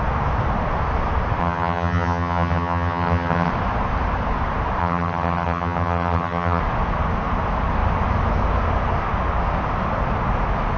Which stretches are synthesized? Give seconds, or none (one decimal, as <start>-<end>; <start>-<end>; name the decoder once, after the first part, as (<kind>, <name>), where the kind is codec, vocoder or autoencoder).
1.4-3.5 (vocoder, HiFi-GAN); 4.8-6.6